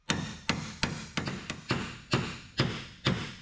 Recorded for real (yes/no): yes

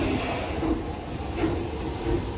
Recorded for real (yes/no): yes